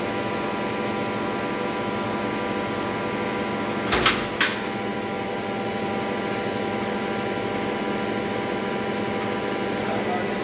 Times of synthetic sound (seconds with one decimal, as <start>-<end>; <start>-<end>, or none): none